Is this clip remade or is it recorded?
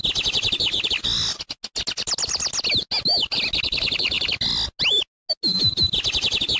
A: recorded